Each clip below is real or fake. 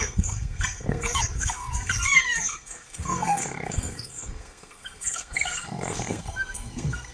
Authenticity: fake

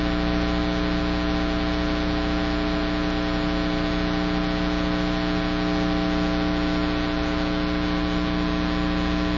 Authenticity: real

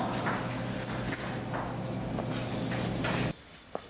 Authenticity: real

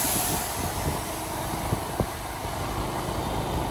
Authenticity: real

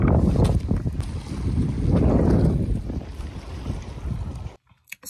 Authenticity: real